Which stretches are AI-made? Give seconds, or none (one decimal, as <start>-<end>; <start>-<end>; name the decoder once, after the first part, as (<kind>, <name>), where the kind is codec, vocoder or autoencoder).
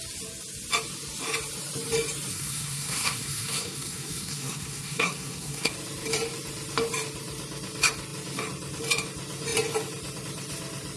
2.3-5.7 (codec, SNAC)